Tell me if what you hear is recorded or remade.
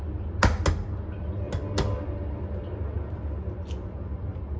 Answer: recorded